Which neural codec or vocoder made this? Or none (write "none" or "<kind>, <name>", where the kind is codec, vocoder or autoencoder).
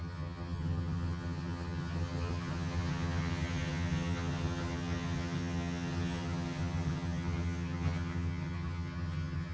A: vocoder, HiFi-GAN